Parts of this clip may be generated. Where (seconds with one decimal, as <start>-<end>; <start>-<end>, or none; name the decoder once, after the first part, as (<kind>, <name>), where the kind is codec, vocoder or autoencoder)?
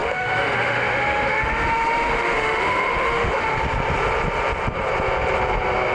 0.0-3.5 (autoencoder, DAC-VAE)